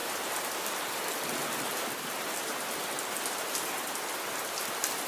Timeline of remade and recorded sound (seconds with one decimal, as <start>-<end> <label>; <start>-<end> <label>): 0.0-5.1 remade

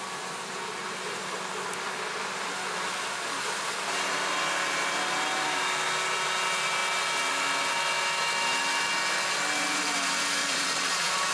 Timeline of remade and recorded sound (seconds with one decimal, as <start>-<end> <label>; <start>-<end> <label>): 0.0-10.4 recorded; 10.4-11.3 remade

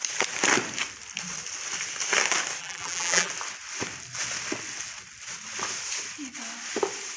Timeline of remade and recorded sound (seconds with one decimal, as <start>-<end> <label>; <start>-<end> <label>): 0.0-2.6 recorded; 2.6-3.3 remade; 3.3-7.2 recorded

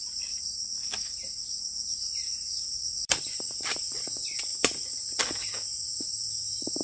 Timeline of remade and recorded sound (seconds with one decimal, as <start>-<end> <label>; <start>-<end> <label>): 0.0-4.5 remade; 4.5-6.0 recorded; 6.0-6.8 remade

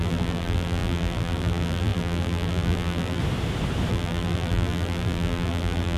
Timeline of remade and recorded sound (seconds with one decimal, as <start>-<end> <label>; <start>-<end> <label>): 0.0-3.2 remade; 3.2-3.9 recorded; 3.9-6.0 remade

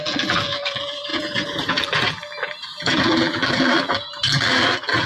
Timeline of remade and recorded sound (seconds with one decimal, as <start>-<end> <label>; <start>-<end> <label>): 0.0-5.1 remade

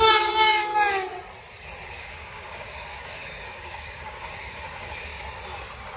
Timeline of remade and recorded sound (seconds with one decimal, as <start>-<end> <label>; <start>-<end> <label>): 0.0-0.7 remade; 0.7-2.0 recorded; 2.0-5.1 remade; 5.1-6.0 recorded

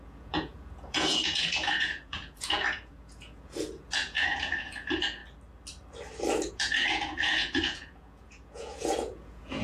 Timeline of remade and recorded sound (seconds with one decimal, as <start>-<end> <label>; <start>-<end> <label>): 0.0-5.2 remade; 5.2-6.5 recorded; 6.5-9.6 remade